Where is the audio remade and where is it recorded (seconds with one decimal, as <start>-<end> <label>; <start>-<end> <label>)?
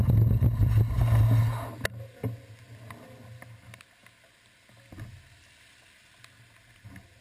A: 0.0-7.2 recorded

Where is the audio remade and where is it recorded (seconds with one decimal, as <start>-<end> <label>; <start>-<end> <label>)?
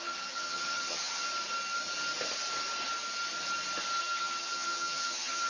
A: 0.0-1.3 remade; 1.3-4.0 recorded; 4.0-5.5 remade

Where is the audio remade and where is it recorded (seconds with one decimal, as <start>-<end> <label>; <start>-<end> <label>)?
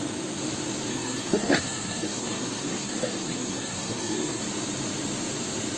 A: 0.0-0.9 recorded; 0.9-4.4 remade; 4.4-5.8 recorded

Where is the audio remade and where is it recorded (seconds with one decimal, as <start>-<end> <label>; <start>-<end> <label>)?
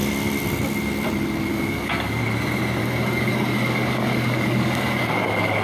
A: 0.0-1.5 recorded; 1.5-2.2 remade; 2.2-2.8 recorded; 2.8-5.6 remade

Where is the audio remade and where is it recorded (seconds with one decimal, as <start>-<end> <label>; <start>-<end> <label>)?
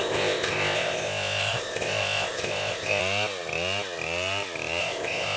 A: 0.0-3.0 remade; 3.0-4.8 recorded; 4.8-5.4 remade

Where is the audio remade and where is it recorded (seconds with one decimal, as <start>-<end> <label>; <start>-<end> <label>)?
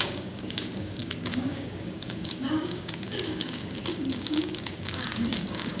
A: 0.0-5.8 remade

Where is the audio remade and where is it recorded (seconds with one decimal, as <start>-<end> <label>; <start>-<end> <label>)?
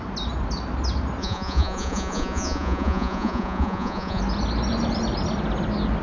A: 0.0-1.2 recorded; 1.2-4.2 remade; 4.2-6.0 recorded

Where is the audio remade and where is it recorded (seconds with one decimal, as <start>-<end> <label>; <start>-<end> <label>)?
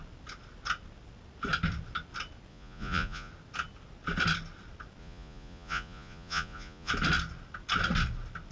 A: 0.0-2.5 recorded; 2.5-3.3 remade; 3.3-5.0 recorded; 5.0-6.9 remade; 6.9-8.5 recorded